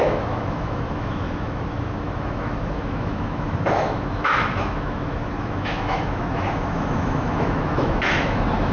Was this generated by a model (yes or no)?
yes